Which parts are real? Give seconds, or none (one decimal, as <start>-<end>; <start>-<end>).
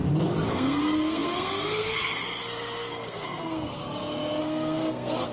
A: 0.0-0.5; 3.8-4.4